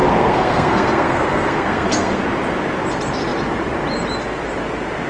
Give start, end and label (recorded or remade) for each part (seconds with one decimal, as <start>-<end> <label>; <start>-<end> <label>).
0.0-2.2 remade; 2.2-5.1 recorded